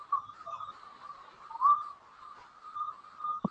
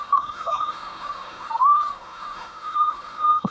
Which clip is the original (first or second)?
first